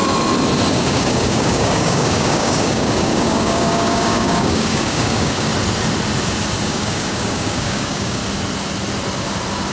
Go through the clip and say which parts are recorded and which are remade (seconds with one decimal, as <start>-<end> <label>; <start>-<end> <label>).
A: 0.0-0.7 recorded; 0.7-5.5 remade; 5.5-6.6 recorded; 6.6-8.2 remade; 8.2-9.7 recorded